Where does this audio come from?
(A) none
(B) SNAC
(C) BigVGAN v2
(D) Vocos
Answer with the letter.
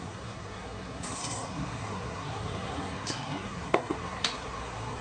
B